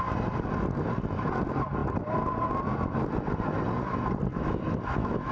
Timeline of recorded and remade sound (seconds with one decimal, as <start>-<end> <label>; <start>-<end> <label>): 0.0-4.3 recorded; 4.3-5.3 remade

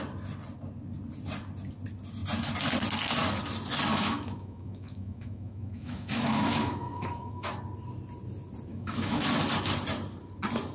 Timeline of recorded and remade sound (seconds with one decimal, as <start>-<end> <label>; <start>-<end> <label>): 0.0-3.9 recorded; 3.9-7.5 remade; 7.5-8.7 recorded; 8.7-9.3 remade; 9.3-10.7 recorded